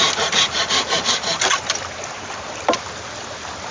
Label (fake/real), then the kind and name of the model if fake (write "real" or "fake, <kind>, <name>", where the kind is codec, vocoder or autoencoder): real